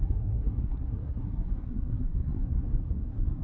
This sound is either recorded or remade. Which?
remade